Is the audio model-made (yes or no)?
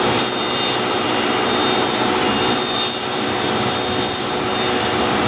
no